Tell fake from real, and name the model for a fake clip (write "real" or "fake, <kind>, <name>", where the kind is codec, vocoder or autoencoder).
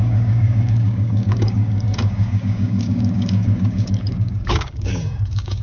fake, codec, DAC